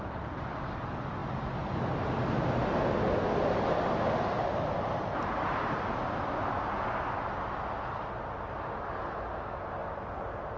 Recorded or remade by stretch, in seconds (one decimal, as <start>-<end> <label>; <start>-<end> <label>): 0.0-10.6 recorded

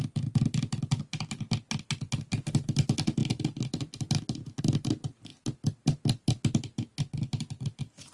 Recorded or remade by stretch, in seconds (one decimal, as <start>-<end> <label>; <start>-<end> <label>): 0.0-3.2 recorded; 3.2-4.6 remade; 4.6-8.1 recorded

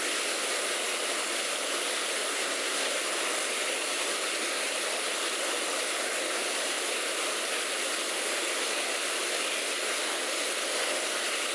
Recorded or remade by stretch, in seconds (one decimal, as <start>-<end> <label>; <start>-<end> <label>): 0.0-2.3 recorded; 2.3-2.9 remade; 2.9-11.5 recorded

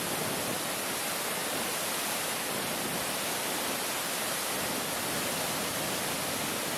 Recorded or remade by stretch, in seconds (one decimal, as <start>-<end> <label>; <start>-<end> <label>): 0.0-6.8 recorded